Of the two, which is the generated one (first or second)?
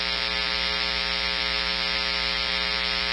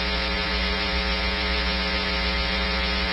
second